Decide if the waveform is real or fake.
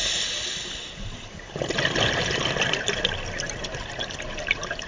real